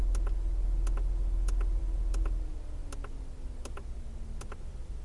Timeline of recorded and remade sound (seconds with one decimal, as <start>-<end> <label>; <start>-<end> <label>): 0.0-5.0 recorded